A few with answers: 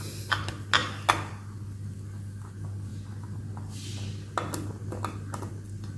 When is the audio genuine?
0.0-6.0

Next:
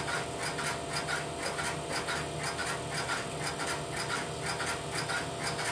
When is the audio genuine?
0.0-5.7

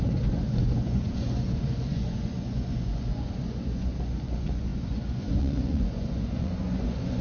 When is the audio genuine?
none

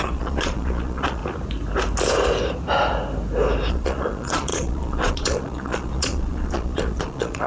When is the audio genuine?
1.2-3.7